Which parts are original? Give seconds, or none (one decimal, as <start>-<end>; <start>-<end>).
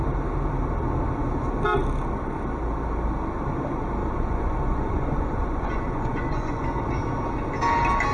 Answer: 0.0-4.0; 6.8-8.1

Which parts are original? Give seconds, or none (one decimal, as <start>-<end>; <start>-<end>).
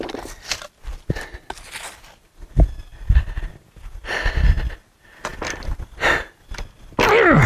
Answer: 0.0-2.9; 3.5-7.5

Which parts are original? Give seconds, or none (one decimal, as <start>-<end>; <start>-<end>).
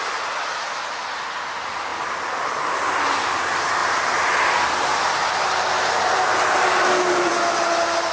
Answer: 0.0-8.1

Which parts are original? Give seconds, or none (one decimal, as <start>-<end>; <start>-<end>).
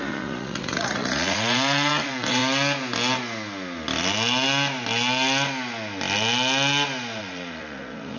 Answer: 2.4-7.2